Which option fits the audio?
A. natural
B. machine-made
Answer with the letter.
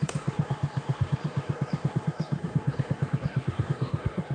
B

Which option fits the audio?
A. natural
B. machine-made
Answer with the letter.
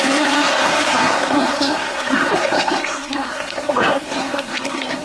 B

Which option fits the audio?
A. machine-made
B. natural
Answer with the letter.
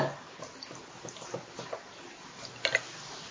B